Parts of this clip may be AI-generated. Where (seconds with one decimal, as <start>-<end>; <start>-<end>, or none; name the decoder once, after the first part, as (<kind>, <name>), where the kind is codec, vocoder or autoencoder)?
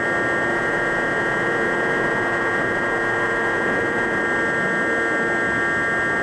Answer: 0.5-4.2 (vocoder, Vocos)